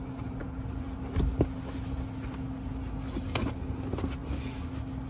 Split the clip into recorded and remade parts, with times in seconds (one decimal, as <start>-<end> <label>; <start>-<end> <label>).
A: 0.0-5.1 recorded